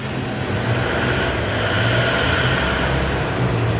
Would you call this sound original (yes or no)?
yes